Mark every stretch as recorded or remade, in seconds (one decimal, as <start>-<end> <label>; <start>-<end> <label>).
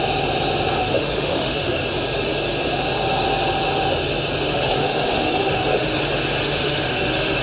0.0-0.8 recorded; 0.8-1.8 remade; 1.8-4.5 recorded; 4.5-6.0 remade; 6.0-6.4 recorded; 6.4-7.4 remade